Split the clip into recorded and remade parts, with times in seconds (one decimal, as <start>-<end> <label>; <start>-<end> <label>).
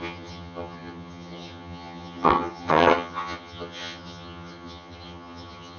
0.0-5.8 remade